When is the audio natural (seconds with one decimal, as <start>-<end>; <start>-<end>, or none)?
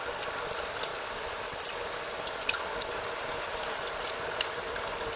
0.0-5.2